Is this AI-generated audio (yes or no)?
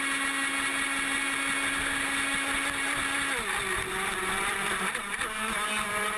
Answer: no